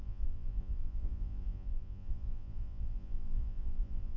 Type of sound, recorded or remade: remade